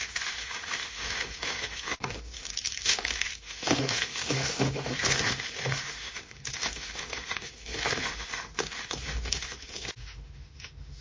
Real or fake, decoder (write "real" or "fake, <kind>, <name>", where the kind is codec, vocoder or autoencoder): fake, autoencoder, DAC-VAE